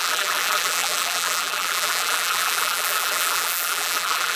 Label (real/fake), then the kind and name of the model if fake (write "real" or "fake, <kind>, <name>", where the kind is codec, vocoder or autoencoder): fake, vocoder, BigVGAN v2